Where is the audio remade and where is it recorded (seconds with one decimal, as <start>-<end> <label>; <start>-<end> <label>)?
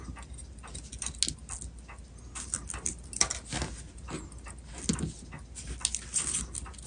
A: 0.0-6.9 recorded